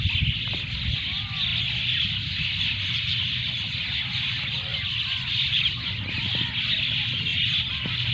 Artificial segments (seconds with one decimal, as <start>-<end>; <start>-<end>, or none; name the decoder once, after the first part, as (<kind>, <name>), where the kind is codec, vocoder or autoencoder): none